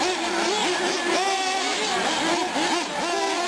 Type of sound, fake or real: real